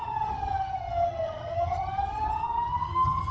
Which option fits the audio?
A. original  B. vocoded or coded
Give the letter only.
B